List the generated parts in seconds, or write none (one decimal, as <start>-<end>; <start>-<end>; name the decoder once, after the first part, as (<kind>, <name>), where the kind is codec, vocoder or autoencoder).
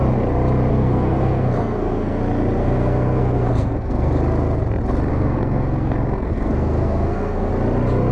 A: 0.7-2.2 (codec, SNAC); 2.6-4.1; 5.1-7.5